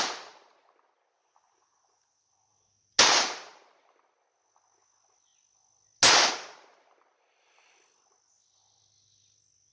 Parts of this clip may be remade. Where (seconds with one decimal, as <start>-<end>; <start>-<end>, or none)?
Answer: none